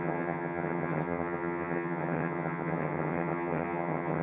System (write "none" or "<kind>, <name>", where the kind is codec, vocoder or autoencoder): vocoder, HiFi-GAN